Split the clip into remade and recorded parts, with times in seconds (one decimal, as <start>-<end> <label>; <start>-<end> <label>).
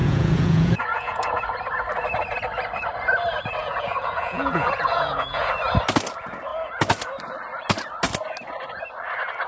0.0-1.4 remade; 1.4-3.6 recorded; 3.6-5.5 remade; 5.5-9.5 recorded